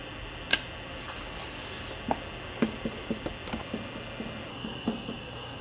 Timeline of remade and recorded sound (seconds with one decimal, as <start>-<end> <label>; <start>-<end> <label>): 0.0-4.5 recorded; 4.5-5.6 remade